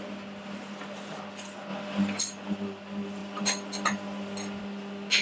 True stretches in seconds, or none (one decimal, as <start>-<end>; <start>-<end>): 0.0-5.2